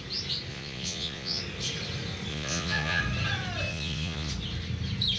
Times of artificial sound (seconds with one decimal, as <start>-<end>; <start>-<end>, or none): 0.5-1.4; 2.3-3.0; 3.7-4.3